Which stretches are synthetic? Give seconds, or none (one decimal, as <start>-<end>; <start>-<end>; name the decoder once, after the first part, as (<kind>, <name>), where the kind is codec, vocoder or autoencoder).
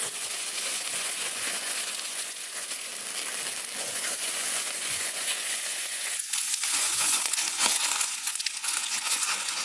0.0-2.9 (vocoder, Vocos); 3.8-9.6